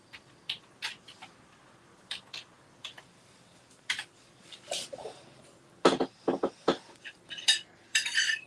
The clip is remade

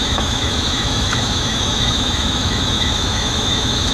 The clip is remade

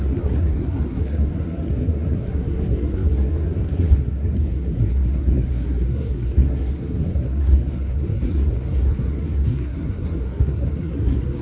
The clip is remade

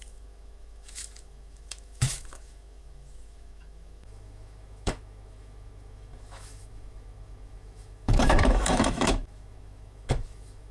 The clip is remade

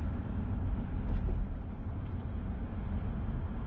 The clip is recorded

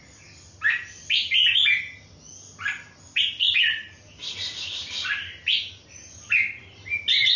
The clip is recorded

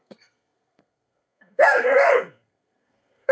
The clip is remade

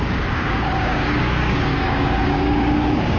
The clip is remade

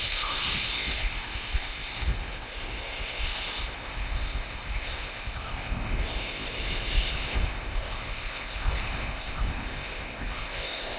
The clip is remade